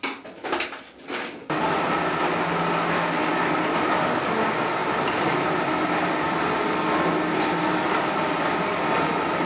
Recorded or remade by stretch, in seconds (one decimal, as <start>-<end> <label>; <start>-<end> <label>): 0.0-9.5 recorded

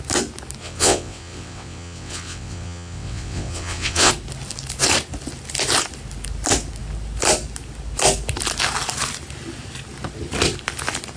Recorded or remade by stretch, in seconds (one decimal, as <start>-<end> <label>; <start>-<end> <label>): 0.0-0.6 recorded; 0.6-4.1 remade; 4.1-11.2 recorded

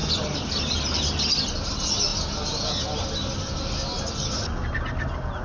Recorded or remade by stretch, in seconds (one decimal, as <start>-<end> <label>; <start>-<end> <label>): 0.0-5.4 recorded

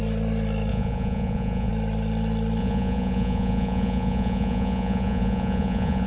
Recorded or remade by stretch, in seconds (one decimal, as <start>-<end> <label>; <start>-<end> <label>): 0.0-0.7 recorded; 0.7-1.7 remade; 1.7-2.6 recorded; 2.6-6.1 remade